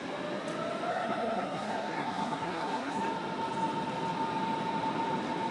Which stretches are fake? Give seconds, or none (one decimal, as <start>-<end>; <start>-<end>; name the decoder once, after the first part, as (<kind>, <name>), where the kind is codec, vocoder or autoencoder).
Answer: 0.9-3.0 (codec, SNAC)